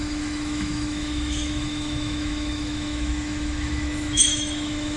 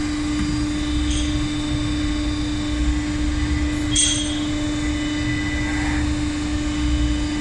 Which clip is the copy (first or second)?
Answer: first